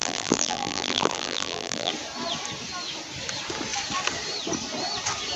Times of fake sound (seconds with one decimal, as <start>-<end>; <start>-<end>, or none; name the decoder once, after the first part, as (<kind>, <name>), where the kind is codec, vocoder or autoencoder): 0.0-1.9 (vocoder, BigVGAN v2)